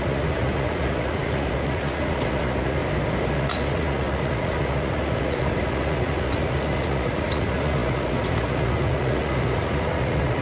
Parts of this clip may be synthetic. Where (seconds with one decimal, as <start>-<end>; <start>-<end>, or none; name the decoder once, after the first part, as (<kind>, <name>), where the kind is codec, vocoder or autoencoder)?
0.0-2.8 (vocoder, Vocos); 3.3-10.4

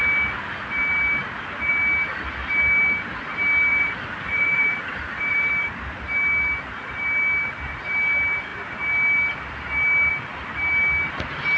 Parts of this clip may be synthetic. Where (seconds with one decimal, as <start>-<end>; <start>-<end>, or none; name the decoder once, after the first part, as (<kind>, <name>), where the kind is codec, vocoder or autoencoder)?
3.7-5.7 (vocoder, BigVGAN v2)

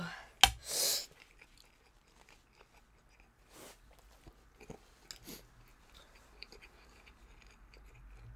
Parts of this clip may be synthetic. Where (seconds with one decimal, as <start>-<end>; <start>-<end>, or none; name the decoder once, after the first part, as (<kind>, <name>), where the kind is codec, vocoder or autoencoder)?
5.7-8.0 (vocoder, BigVGAN v2)

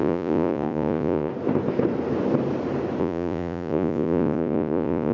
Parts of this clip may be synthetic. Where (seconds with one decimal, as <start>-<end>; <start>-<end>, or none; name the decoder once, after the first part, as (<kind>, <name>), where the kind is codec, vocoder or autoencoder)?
0.0-1.3 (vocoder, Vocos); 3.0-5.1

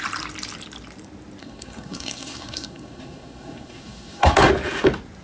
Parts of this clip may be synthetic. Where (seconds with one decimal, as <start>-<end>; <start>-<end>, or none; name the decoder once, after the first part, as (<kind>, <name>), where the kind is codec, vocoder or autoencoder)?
1.4-4.5 (codec, SNAC)